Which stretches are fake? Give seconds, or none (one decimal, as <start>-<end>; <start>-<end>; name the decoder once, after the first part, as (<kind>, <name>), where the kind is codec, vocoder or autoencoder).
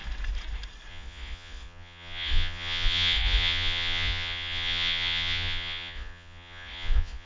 0.9-7.3 (vocoder, Vocos)